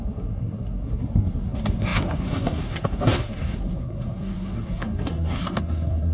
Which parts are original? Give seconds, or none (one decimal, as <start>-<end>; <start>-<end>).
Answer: none